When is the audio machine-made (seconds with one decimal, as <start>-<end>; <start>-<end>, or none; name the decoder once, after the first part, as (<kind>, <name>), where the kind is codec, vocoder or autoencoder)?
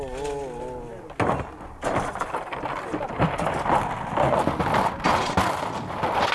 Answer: none